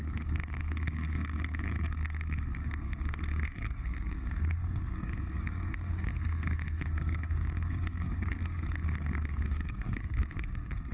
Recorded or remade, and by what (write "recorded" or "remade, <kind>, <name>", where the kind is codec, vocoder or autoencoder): remade, codec, SNAC